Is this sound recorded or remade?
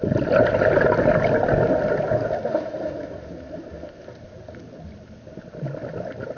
recorded